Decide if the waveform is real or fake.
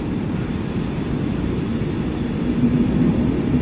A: real